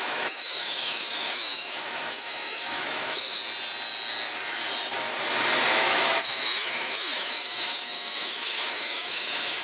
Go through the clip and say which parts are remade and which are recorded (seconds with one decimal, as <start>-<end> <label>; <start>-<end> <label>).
0.0-3.4 remade; 3.4-5.7 recorded; 5.7-9.6 remade